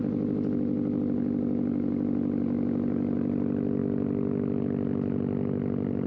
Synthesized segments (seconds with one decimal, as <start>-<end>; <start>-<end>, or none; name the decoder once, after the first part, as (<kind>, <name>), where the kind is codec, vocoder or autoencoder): none